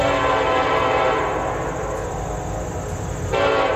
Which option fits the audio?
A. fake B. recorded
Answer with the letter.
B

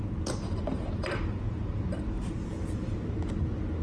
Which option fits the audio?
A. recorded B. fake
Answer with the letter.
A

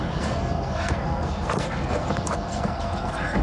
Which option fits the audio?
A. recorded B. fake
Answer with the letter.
B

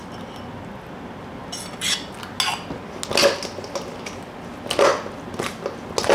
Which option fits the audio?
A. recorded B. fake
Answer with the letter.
A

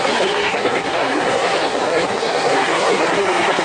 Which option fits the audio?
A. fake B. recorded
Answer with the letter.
A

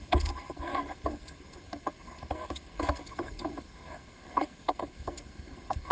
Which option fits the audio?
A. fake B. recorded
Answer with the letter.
A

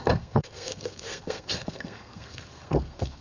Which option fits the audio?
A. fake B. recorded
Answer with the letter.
A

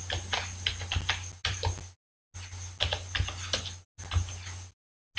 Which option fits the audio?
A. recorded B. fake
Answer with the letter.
A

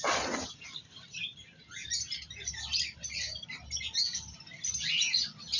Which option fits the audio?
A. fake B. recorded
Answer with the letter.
B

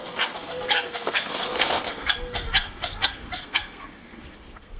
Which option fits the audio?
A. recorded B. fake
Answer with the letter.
B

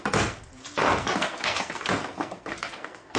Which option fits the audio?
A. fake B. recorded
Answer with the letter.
A